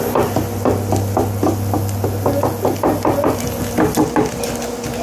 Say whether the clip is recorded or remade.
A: recorded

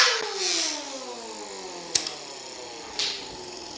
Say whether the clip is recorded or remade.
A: recorded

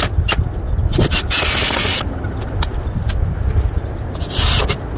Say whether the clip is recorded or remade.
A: recorded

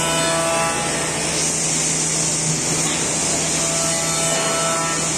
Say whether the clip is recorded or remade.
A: recorded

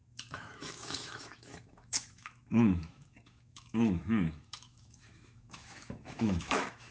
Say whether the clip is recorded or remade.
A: remade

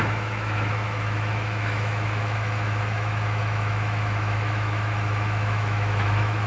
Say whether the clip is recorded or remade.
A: remade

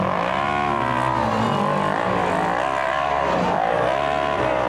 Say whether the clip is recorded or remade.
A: recorded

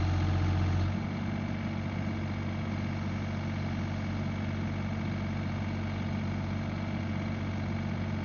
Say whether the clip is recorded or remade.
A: recorded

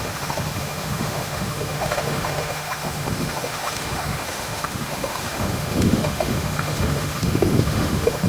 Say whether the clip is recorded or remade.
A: remade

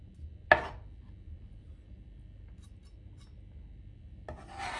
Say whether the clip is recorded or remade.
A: recorded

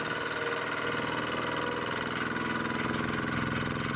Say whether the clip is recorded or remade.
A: recorded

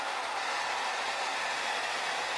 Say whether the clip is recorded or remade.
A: recorded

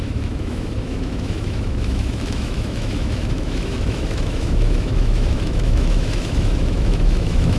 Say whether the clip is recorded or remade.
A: remade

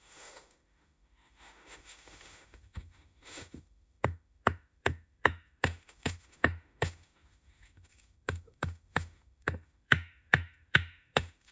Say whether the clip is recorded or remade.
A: remade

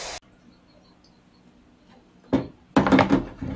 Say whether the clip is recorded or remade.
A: recorded